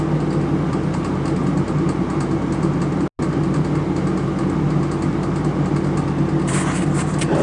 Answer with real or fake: real